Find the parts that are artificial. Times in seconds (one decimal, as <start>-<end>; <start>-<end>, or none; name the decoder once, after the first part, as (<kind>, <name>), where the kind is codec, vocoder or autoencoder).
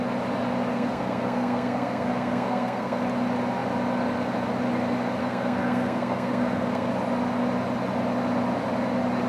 0.7-3.0 (codec, SNAC); 5.2-6.9